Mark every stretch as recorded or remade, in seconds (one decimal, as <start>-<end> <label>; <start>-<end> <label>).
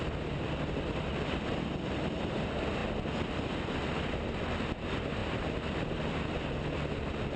0.0-7.4 recorded